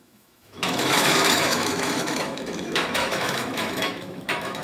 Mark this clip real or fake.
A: fake